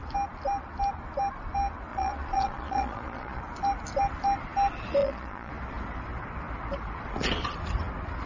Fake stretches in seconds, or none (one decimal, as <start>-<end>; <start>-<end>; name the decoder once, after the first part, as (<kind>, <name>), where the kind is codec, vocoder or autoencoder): 1.9-3.4 (vocoder, Vocos); 5.0-5.5